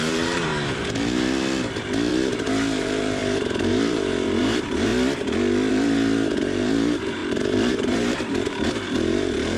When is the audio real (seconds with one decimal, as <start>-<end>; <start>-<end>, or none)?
0.5-2.1; 4.9-5.7